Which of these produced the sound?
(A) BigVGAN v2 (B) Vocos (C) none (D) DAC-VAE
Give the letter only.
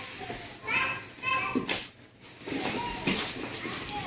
C